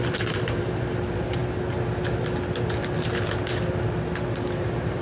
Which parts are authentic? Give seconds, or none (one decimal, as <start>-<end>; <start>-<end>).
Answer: 1.4-4.4